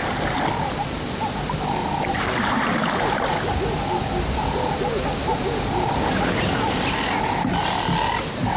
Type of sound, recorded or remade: recorded